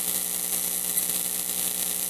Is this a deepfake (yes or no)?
yes